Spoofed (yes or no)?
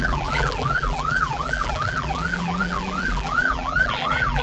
yes